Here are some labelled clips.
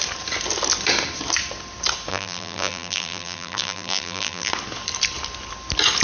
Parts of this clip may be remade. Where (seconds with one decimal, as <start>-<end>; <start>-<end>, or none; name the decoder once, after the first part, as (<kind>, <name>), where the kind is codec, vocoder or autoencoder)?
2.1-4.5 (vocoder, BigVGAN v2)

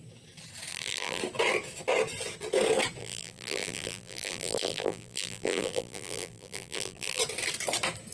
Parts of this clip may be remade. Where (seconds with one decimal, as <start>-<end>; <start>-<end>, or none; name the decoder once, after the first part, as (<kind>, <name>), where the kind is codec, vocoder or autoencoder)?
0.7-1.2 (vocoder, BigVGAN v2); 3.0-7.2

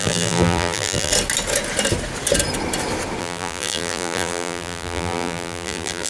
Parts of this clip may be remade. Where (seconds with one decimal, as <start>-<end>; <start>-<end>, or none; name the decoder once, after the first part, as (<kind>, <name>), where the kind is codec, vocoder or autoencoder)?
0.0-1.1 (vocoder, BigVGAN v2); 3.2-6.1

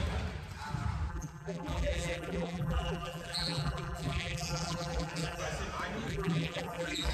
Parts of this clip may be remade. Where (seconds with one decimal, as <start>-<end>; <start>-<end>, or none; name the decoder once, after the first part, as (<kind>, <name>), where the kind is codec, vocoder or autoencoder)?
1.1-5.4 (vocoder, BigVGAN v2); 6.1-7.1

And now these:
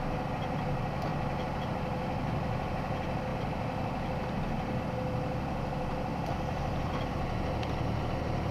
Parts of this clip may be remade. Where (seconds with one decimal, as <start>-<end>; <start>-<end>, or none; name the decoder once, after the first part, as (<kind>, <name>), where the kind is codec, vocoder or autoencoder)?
3.3-4.8 (vocoder, BigVGAN v2); 6.1-7.1

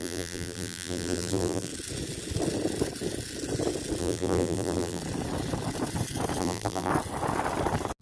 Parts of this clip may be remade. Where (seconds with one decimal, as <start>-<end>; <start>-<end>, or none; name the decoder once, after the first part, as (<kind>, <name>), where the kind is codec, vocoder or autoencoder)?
0.0-1.7 (vocoder, BigVGAN v2); 4.0-5.0; 6.4-6.9

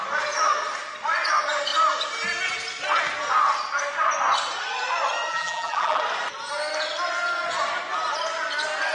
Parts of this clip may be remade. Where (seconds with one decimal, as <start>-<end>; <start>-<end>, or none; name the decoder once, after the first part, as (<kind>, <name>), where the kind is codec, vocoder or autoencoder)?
5.3-6.0 (vocoder, BigVGAN v2)

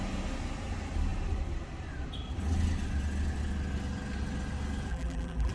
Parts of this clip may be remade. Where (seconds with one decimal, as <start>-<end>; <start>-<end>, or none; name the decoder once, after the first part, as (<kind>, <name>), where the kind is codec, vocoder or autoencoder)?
4.9-5.5 (vocoder, BigVGAN v2)